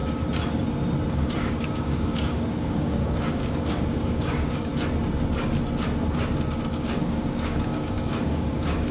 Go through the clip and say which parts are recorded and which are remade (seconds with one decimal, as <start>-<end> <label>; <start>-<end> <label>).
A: 0.0-1.1 recorded; 1.1-4.7 remade; 4.7-6.7 recorded; 6.7-8.9 remade